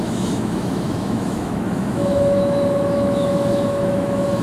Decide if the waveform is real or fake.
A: fake